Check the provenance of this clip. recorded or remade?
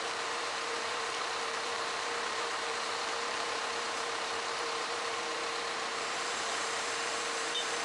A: remade